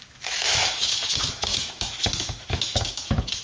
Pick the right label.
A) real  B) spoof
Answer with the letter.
B